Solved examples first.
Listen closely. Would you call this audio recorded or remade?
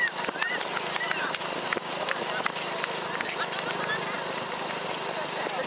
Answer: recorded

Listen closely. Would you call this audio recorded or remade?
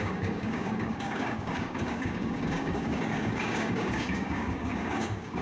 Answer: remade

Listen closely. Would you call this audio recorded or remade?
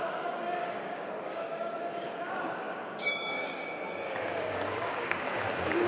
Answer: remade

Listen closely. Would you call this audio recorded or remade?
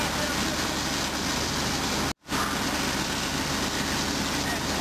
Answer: recorded